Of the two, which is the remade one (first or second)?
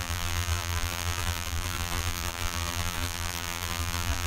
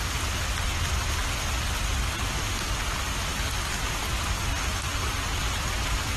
first